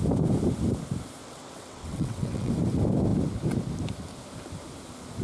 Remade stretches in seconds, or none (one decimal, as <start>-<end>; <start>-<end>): 1.2-2.5